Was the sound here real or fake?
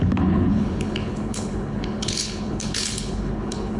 fake